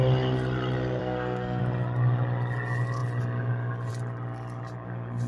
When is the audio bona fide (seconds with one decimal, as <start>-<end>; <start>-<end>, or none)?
0.0-1.0; 1.6-5.3